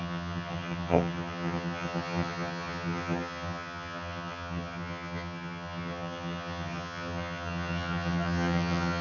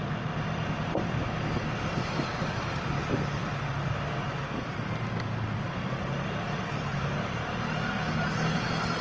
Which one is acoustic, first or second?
second